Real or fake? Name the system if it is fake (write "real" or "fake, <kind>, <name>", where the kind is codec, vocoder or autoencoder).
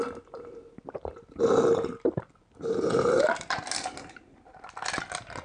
real